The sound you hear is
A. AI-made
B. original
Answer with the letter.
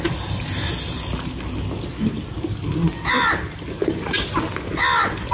B